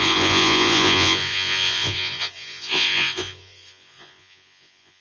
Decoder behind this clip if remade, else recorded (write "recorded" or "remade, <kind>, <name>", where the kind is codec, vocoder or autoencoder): remade, vocoder, Vocos